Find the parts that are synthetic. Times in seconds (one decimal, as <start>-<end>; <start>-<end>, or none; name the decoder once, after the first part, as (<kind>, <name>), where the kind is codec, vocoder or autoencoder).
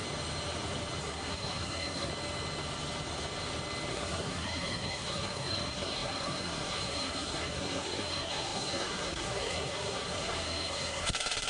1.0-2.1 (codec, SNAC); 3.9-11.5